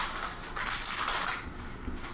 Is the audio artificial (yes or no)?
no